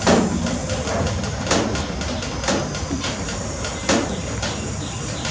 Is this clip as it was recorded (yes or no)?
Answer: yes